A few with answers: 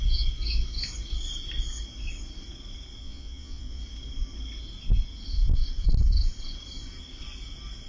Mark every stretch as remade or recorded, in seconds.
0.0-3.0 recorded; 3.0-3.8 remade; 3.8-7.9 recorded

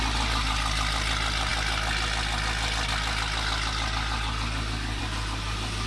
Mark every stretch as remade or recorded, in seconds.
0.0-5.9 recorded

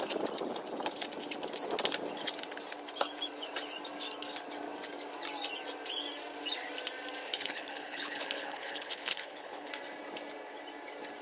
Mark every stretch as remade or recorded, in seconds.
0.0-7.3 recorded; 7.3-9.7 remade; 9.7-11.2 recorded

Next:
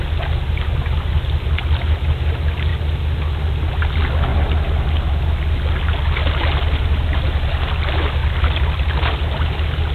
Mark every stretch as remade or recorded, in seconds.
0.0-4.3 recorded; 4.3-5.2 remade; 5.2-9.9 recorded